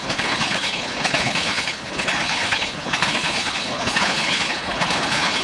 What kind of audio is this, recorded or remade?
remade